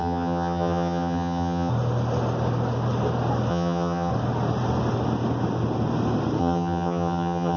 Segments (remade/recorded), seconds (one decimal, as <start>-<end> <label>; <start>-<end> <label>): 0.0-1.7 remade; 1.7-3.5 recorded; 3.5-4.1 remade; 4.1-6.4 recorded; 6.4-7.6 remade